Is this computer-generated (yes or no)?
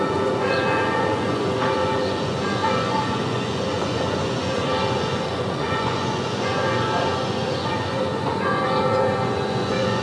yes